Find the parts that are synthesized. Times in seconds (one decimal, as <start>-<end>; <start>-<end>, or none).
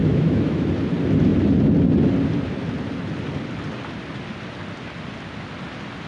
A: 0.0-0.7